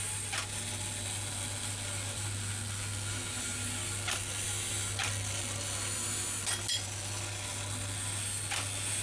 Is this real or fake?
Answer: real